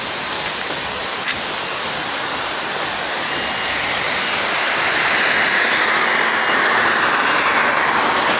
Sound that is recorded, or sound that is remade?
recorded